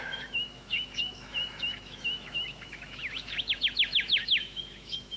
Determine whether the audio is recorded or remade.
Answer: remade